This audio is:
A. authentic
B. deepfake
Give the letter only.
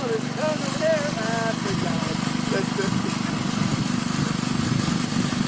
A